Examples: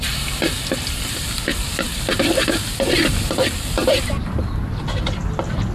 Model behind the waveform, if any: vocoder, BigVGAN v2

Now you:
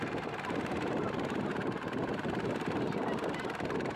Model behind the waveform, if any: vocoder, BigVGAN v2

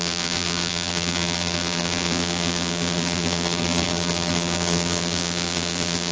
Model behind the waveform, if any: vocoder, BigVGAN v2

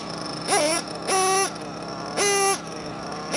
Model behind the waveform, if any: none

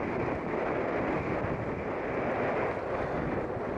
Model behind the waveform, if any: none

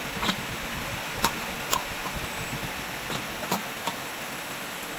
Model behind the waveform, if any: none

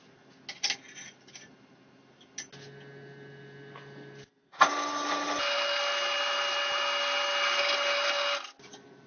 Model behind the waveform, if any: none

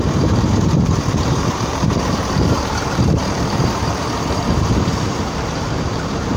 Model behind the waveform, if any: vocoder, BigVGAN v2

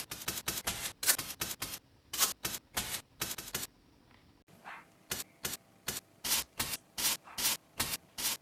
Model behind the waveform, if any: none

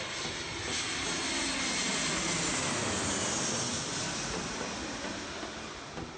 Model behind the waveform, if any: none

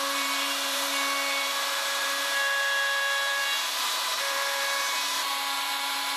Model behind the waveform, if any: vocoder, BigVGAN v2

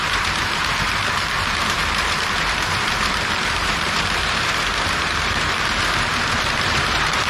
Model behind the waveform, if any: vocoder, BigVGAN v2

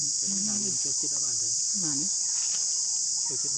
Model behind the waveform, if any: vocoder, BigVGAN v2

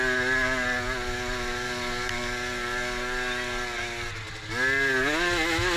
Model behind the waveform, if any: none